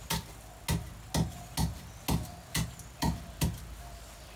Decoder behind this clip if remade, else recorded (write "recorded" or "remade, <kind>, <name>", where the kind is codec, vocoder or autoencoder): recorded